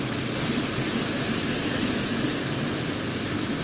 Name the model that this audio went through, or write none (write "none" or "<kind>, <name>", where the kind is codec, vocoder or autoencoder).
none